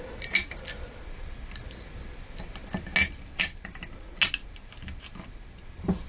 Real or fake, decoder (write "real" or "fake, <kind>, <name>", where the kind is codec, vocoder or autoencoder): real